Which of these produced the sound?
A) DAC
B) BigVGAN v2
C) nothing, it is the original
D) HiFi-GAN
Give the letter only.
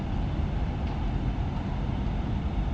C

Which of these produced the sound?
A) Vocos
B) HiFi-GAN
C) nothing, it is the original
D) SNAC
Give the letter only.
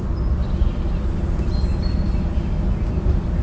C